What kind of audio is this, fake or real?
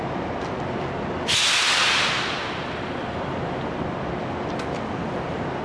real